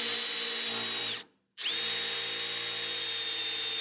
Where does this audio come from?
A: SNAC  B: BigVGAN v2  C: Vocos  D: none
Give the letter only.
D